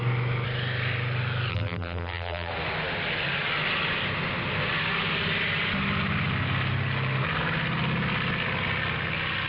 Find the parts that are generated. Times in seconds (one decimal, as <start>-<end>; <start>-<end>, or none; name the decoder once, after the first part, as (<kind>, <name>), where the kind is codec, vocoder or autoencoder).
1.5-2.5 (vocoder, BigVGAN v2)